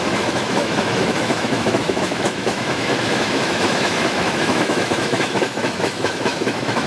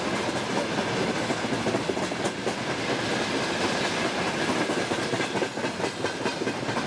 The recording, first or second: second